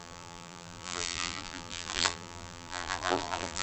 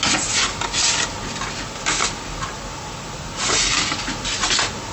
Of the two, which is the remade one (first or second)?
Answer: first